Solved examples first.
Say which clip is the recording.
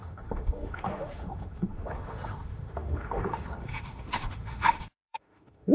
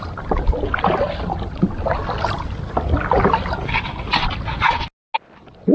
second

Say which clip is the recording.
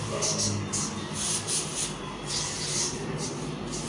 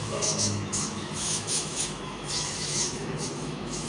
first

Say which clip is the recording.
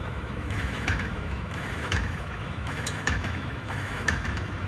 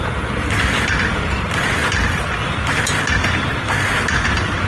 second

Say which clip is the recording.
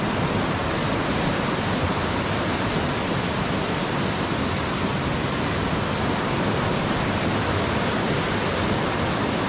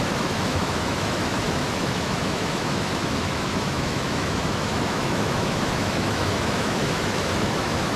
first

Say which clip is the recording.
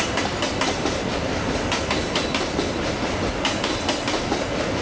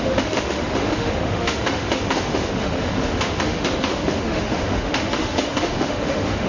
first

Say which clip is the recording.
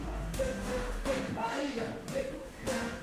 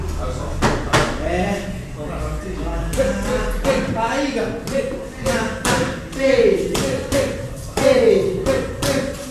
second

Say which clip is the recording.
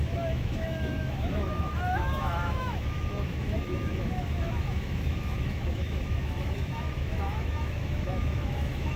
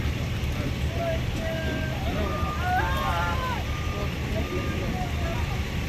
second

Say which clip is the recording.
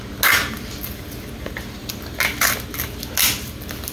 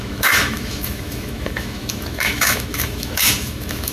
first